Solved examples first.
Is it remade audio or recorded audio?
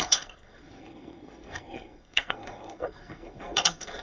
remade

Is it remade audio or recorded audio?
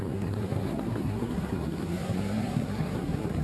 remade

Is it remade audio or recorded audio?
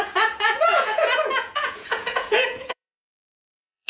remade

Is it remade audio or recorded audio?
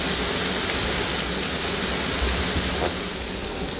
recorded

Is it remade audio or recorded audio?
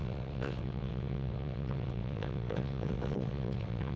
remade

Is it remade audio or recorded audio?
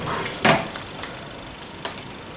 recorded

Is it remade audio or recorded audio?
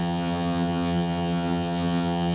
remade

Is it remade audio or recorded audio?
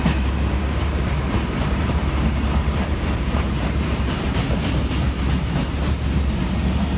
remade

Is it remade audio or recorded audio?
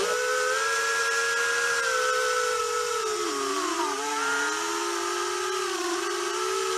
recorded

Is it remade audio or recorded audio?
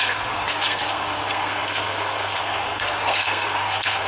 remade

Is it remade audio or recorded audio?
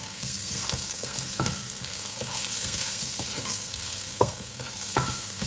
remade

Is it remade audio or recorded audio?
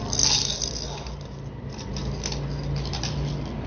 recorded